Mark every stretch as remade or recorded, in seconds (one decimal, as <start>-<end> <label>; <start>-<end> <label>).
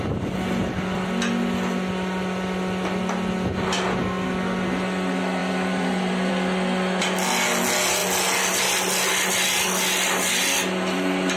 0.0-5.4 recorded; 5.4-6.3 remade; 6.3-11.4 recorded